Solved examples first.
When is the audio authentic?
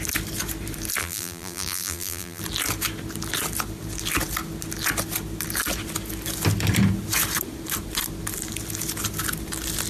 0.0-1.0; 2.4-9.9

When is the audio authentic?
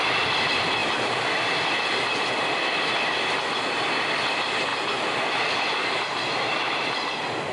0.0-7.5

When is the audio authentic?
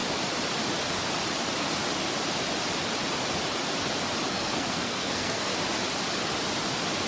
0.0-4.3; 5.5-7.1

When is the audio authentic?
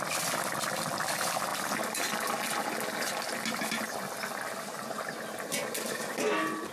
0.0-6.7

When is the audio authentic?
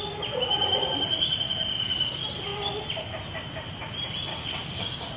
0.0-4.3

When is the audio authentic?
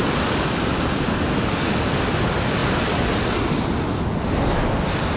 0.0-5.2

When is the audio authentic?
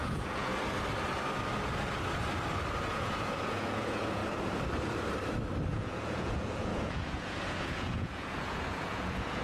0.5-2.8; 4.2-5.7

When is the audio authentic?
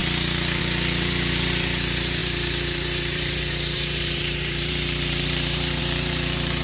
0.0-0.6